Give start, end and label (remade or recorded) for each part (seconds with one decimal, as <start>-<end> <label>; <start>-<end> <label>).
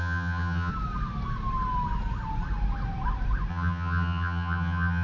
0.0-0.7 remade; 0.7-3.5 recorded; 3.5-5.0 remade